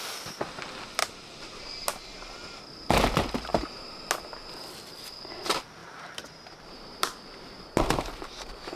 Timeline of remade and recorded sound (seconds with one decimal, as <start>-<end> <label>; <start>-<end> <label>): 0.0-1.0 recorded; 1.0-1.7 remade; 1.7-3.5 recorded; 3.5-4.1 remade; 4.1-5.8 recorded; 5.8-7.7 remade; 7.7-8.8 recorded